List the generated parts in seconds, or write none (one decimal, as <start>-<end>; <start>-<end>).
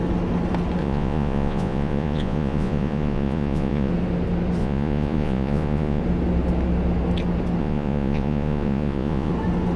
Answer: 0.8-3.9; 4.6-6.0; 7.6-9.3